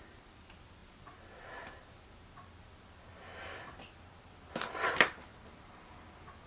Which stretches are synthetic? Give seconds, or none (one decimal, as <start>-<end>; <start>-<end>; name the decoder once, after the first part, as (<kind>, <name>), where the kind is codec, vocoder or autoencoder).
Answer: none